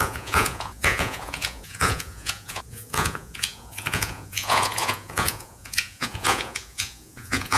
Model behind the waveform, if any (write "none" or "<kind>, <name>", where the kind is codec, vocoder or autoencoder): vocoder, Vocos